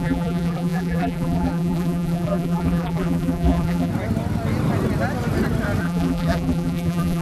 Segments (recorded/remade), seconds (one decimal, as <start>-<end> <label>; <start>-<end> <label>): 0.0-3.9 remade; 3.9-5.8 recorded; 5.8-7.2 remade